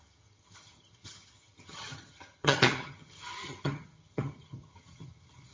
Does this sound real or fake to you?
fake